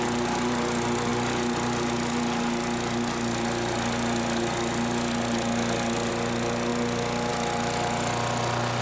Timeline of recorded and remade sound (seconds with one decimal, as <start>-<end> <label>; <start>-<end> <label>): 0.0-8.8 recorded

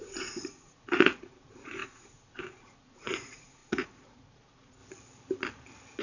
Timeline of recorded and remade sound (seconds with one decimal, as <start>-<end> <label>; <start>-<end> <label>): 0.0-4.8 remade; 4.8-6.0 recorded

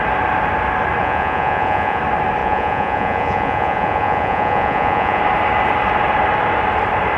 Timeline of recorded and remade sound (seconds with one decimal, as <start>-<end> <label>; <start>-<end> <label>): 0.0-1.0 recorded; 1.0-2.0 remade; 2.0-2.4 recorded; 2.4-5.2 remade; 5.2-7.2 recorded

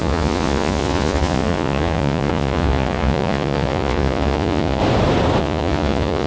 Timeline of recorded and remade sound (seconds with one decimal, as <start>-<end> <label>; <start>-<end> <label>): 0.0-4.8 remade; 4.8-5.4 recorded; 5.4-6.3 remade